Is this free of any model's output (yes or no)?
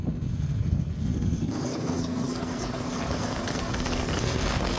no